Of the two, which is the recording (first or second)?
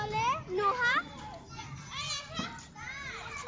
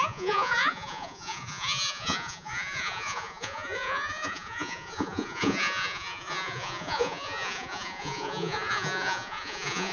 first